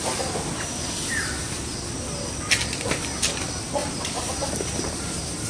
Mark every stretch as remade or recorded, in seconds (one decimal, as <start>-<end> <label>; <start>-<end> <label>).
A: 0.0-3.8 recorded; 3.8-5.5 remade